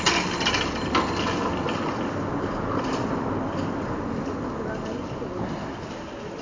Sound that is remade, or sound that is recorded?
recorded